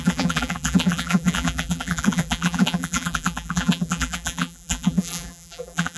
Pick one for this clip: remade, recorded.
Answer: remade